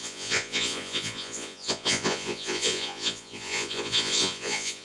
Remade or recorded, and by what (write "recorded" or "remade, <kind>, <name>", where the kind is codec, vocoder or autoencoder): remade, vocoder, Vocos